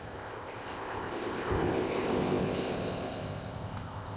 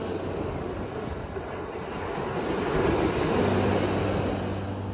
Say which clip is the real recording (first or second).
second